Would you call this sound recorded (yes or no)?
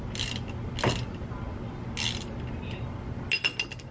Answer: yes